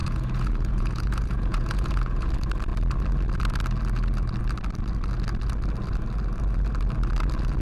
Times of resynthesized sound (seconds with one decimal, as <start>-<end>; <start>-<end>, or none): 0.0-2.3

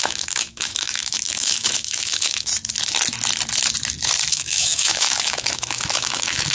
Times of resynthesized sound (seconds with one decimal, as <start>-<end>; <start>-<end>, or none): 0.0-2.5; 4.3-6.5

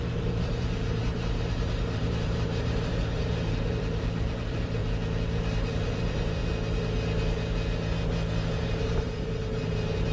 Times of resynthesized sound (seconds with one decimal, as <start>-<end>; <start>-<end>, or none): 0.0-4.8; 5.7-6.4; 8.5-10.1